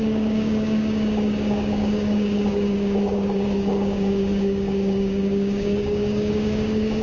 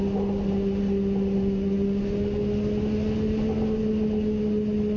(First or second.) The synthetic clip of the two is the first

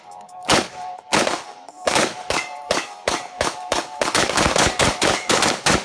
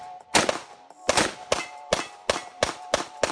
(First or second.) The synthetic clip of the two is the first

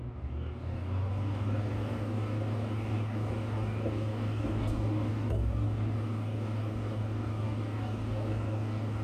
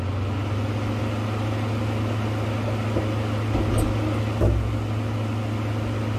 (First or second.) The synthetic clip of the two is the first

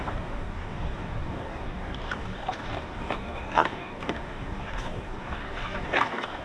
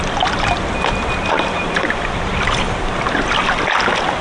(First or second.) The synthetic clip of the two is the first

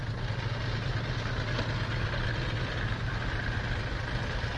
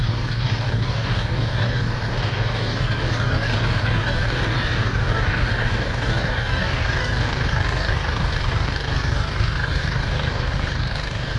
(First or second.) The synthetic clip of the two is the second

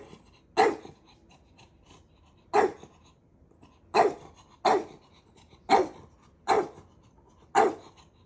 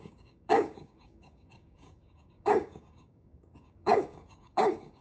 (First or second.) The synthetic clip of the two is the second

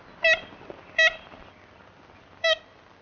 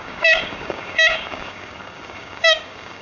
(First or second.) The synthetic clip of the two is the second